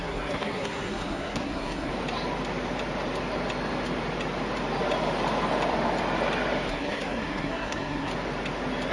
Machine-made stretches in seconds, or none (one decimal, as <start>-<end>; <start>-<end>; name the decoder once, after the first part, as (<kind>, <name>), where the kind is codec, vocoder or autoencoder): 0.0-1.9 (codec, SNAC); 6.7-8.1